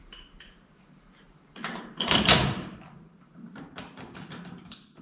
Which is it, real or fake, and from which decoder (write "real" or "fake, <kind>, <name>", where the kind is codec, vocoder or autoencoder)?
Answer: fake, vocoder, BigVGAN v2